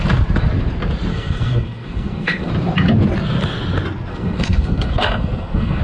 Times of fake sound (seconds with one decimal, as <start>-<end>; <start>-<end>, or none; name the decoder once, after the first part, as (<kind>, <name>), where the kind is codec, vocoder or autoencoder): 1.1-2.5 (codec, SNAC); 4.1-5.8

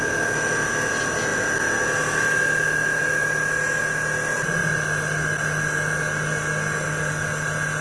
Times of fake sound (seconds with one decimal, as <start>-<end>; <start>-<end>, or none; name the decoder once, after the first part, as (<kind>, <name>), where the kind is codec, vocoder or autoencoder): none